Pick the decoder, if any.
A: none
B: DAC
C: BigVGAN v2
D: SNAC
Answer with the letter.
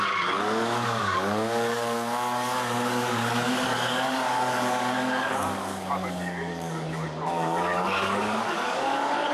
B